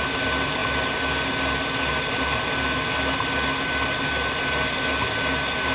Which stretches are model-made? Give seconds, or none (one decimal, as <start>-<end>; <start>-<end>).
none